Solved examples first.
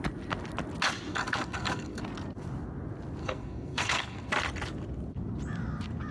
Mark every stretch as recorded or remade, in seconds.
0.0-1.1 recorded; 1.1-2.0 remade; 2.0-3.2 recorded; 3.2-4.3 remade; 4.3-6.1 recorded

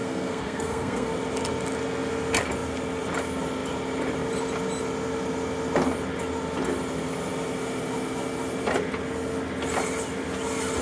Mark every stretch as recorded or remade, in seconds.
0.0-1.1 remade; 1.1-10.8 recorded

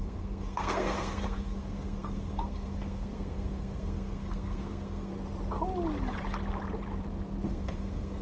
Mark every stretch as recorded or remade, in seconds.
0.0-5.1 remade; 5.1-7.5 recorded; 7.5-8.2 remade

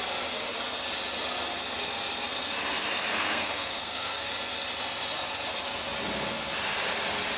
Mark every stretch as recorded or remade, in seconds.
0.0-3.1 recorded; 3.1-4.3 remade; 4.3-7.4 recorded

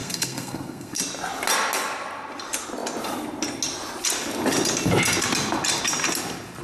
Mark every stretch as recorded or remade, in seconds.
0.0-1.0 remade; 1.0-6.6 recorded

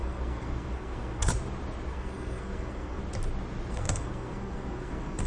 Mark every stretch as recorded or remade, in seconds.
0.0-1.3 remade; 1.3-1.9 recorded; 1.9-3.0 remade; 3.0-3.7 recorded; 3.7-5.3 remade

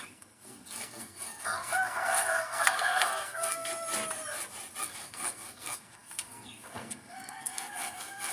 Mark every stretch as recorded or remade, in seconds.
0.0-3.7 remade; 3.7-4.8 recorded; 4.8-8.3 remade

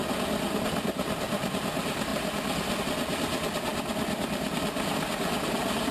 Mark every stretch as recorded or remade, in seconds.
0.0-5.9 recorded